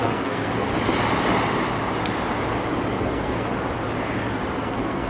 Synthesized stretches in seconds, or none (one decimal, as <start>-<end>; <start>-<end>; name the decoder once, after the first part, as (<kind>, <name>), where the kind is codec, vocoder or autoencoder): 0.0-0.7 (codec, SNAC); 3.0-3.5; 4.6-5.1